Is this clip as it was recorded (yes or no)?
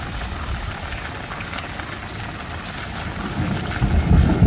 yes